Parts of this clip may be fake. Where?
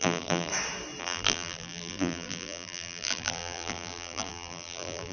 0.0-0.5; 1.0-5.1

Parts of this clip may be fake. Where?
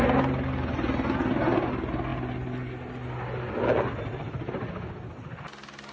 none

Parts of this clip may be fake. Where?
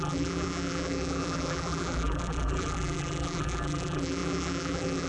0.0-5.1